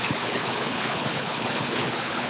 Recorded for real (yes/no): no